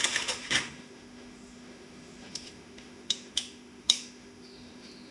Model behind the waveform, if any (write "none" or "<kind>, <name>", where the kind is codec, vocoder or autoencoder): autoencoder, DAC-VAE